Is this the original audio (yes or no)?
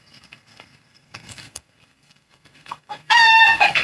no